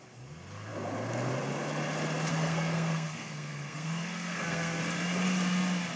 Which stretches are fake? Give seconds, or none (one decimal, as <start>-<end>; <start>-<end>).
2.3-4.8